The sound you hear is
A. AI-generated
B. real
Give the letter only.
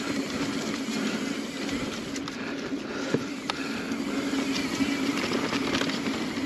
B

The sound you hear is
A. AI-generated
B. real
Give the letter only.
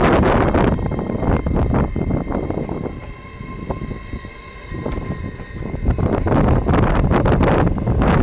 B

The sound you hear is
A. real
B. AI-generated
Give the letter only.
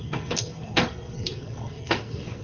B